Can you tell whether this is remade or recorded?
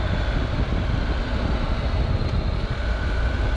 recorded